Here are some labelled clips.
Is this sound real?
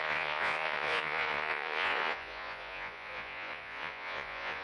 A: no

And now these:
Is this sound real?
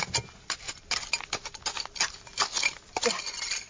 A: yes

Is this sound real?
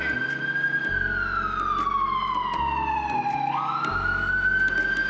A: yes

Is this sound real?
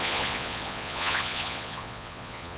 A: no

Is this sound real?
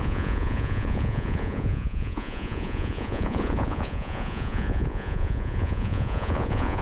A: no